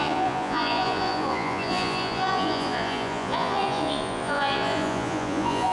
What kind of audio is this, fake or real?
fake